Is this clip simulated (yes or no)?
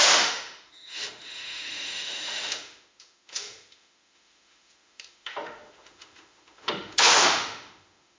yes